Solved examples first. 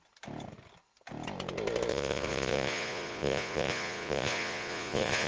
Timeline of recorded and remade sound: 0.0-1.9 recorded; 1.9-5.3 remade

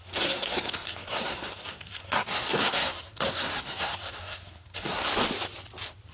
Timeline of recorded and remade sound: 0.0-5.1 remade; 5.1-6.1 recorded

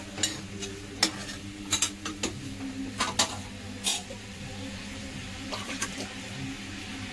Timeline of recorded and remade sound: 0.0-3.9 recorded; 3.9-4.4 remade; 4.4-4.9 recorded; 4.9-6.3 remade; 6.3-7.1 recorded

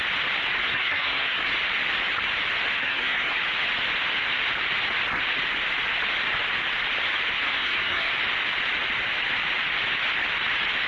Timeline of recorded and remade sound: 0.0-0.6 recorded; 0.6-1.5 remade; 1.5-2.8 recorded; 2.8-3.4 remade; 3.4-7.5 recorded; 7.5-8.1 remade; 8.1-10.9 recorded

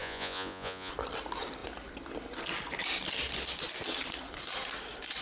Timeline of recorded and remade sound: 0.0-0.9 remade; 0.9-5.2 recorded

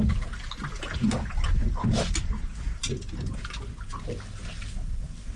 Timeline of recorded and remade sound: 0.0-5.4 recorded

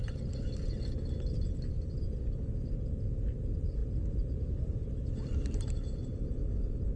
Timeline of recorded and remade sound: 0.0-7.0 recorded

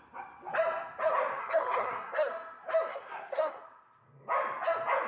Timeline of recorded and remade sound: 0.0-1.4 recorded; 1.4-2.3 remade; 2.3-2.9 recorded; 2.9-3.6 remade; 3.6-5.1 recorded